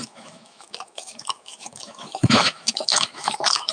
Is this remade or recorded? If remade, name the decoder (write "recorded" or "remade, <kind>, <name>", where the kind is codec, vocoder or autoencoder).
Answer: remade, autoencoder, DAC-VAE